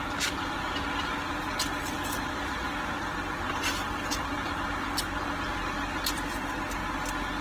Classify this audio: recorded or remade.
recorded